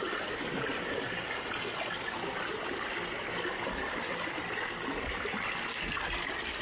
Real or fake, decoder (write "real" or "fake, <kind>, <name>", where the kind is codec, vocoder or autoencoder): real